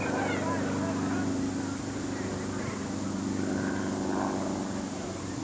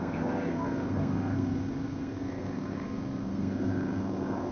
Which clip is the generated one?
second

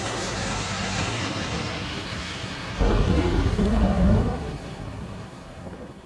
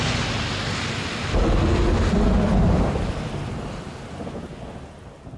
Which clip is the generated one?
first